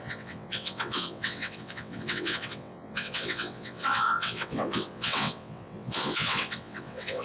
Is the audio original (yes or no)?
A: no